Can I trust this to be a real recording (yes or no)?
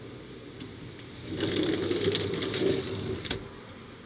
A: yes